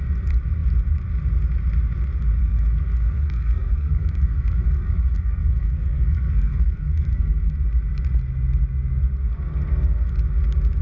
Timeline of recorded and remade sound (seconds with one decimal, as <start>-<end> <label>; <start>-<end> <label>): 0.0-2.4 recorded; 2.4-7.5 remade; 7.5-10.8 recorded